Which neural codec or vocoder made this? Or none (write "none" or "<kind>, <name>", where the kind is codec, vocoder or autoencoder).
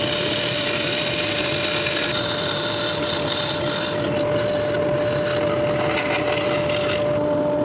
none